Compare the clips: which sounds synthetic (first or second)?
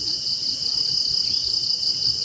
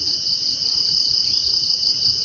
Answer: second